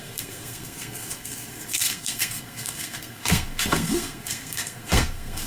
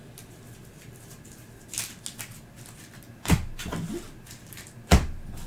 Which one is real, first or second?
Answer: second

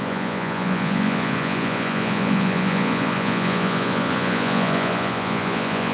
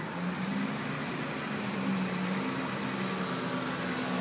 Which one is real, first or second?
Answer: second